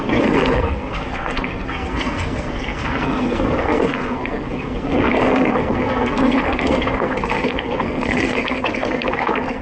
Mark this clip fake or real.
fake